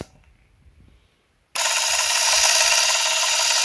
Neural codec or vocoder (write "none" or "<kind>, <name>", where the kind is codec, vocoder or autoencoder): none